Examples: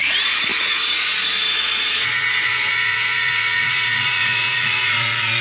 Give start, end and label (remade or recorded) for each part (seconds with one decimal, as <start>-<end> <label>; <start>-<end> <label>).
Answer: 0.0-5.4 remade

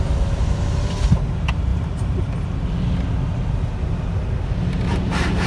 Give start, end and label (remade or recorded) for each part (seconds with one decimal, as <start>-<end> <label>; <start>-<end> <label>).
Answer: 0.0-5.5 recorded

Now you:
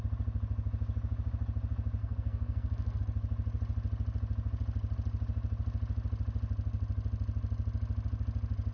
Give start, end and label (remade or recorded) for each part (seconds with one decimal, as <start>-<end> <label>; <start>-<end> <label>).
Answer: 0.0-2.0 recorded; 2.0-3.0 remade; 3.0-8.7 recorded

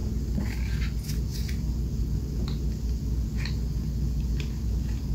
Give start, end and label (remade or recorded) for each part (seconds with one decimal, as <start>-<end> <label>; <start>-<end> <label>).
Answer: 0.0-5.1 recorded

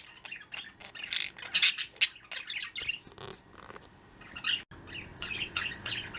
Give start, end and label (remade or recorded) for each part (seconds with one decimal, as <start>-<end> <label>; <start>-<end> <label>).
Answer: 0.0-5.1 recorded; 5.1-6.2 remade

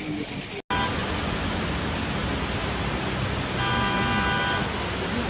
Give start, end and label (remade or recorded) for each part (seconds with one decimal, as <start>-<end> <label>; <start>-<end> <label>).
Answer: 0.0-1.0 recorded; 1.0-1.7 remade; 1.7-5.3 recorded

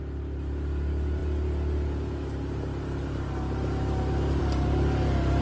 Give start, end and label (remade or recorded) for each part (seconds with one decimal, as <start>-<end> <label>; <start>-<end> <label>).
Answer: 0.0-5.4 recorded